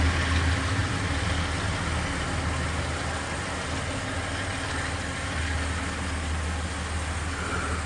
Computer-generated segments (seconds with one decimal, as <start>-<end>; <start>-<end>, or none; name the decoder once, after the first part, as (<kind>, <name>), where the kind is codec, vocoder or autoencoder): 0.8-1.3 (vocoder, BigVGAN v2)